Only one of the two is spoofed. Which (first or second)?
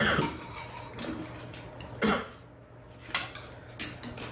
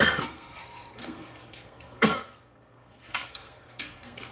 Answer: second